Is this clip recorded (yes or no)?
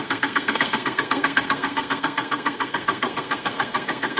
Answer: no